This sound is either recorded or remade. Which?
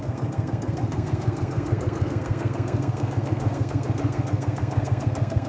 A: remade